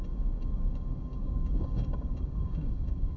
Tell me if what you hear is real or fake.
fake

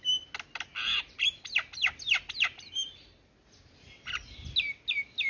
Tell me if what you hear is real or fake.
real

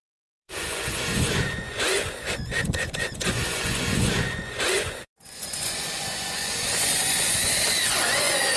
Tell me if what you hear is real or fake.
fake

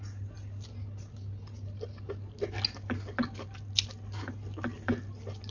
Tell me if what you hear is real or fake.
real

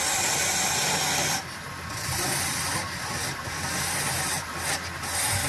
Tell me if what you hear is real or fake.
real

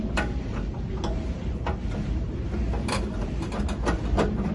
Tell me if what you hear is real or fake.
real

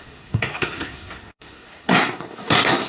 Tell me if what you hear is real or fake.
fake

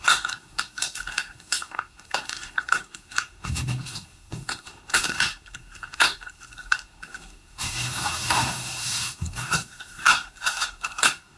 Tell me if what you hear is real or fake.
fake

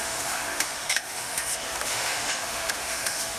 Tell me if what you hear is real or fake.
fake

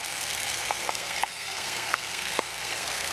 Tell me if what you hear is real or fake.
fake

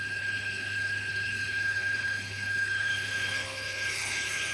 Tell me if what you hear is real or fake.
fake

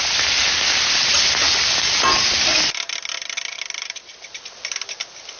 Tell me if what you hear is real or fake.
real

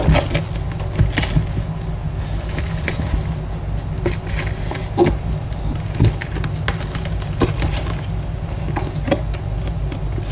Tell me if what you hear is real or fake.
real